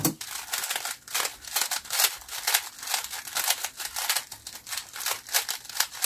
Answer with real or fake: real